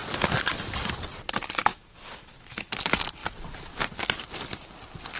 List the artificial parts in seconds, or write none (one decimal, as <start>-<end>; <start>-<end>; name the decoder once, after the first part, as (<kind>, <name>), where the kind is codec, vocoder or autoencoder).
1.7-2.7 (autoencoder, DAC-VAE)

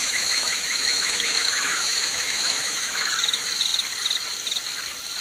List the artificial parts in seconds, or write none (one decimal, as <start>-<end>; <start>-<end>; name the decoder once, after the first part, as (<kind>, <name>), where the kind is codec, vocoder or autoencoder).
0.0-3.1 (autoencoder, DAC-VAE)

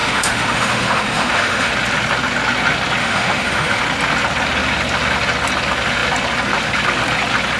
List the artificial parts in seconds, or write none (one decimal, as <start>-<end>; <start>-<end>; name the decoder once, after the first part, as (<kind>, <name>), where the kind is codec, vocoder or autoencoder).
0.0-1.7 (autoencoder, DAC-VAE); 3.0-3.8

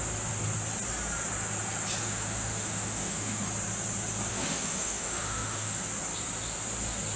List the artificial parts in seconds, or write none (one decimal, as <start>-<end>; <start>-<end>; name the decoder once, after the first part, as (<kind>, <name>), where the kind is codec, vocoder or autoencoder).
2.0-3.4 (autoencoder, DAC-VAE); 4.3-5.8

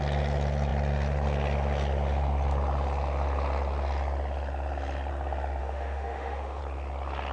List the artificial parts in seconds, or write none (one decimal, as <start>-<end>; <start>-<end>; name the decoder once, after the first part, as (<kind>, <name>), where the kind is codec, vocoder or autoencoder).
5.6-6.6 (autoencoder, DAC-VAE)

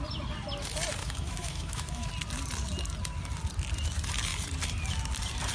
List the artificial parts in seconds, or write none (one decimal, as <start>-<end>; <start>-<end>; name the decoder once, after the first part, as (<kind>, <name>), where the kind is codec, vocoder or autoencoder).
1.0-2.1 (autoencoder, DAC-VAE)

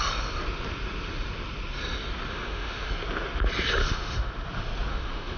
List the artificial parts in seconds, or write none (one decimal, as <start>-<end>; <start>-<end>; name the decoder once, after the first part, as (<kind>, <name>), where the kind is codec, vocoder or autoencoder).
2.3-2.9 (autoencoder, DAC-VAE); 3.8-4.3; 4.9-5.4